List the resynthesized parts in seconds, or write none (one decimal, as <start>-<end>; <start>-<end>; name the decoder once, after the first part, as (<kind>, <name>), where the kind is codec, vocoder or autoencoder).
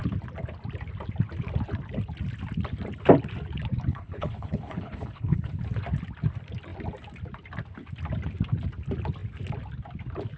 3.9-5.5 (codec, HILCodec)